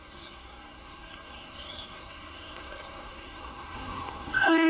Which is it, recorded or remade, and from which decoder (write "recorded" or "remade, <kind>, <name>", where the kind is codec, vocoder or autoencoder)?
remade, codec, SNAC